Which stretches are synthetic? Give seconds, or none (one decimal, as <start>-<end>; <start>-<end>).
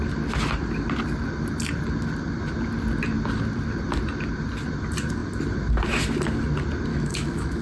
6.9-7.6